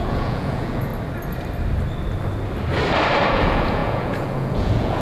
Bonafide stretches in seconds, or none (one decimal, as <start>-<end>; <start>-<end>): 0.9-3.3